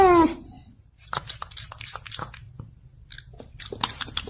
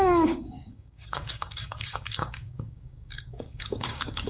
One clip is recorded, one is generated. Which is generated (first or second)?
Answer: second